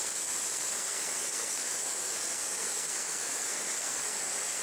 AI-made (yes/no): yes